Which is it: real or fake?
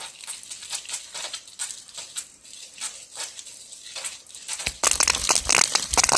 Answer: real